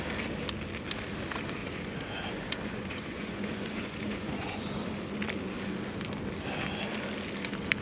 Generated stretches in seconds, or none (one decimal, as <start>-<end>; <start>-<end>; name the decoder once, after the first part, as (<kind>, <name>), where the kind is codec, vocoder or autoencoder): 1.6-4.7 (vocoder, Vocos)